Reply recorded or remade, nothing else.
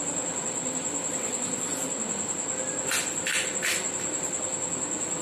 recorded